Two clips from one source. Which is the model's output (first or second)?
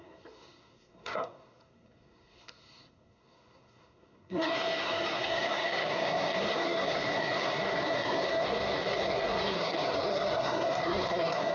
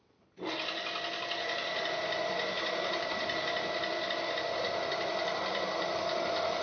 first